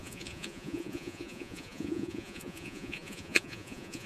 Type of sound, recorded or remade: remade